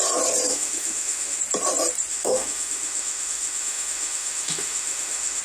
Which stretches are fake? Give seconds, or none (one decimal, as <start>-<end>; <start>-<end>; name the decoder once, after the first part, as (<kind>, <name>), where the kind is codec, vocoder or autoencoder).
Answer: 0.5-1.4 (autoencoder, DAC-VAE); 2.1-5.4